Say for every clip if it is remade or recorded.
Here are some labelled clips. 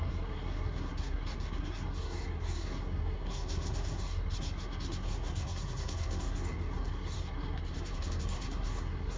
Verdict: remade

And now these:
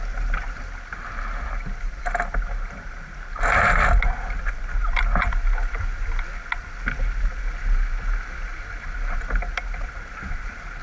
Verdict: recorded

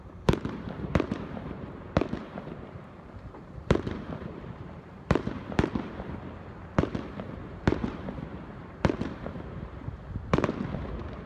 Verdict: remade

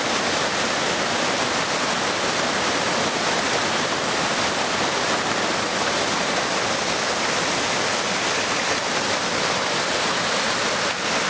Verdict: recorded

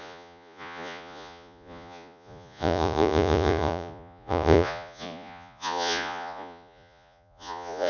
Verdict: remade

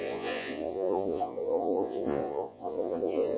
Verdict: remade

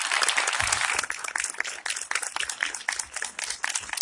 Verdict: recorded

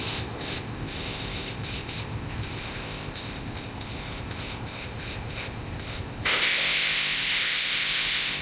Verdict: remade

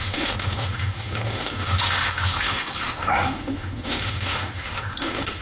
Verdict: remade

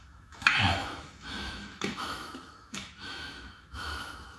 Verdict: remade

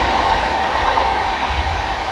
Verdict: remade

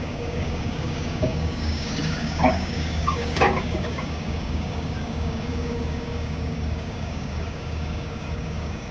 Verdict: remade